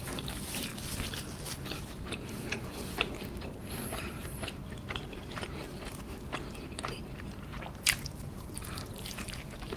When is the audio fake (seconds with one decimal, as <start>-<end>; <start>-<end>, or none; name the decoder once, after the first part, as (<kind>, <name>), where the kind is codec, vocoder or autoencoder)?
0.0-0.7 (vocoder, BigVGAN v2); 1.8-9.8